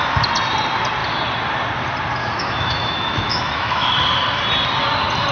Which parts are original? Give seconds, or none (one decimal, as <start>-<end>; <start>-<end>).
0.0-2.2; 3.9-5.3